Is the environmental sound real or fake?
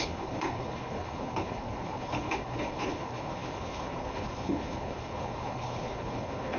fake